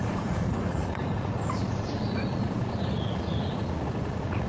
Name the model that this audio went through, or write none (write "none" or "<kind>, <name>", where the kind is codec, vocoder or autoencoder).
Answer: vocoder, Vocos